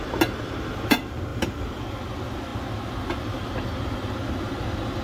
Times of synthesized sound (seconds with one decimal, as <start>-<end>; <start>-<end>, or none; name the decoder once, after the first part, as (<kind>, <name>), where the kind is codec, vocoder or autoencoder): 1.3-1.8 (vocoder, BigVGAN v2)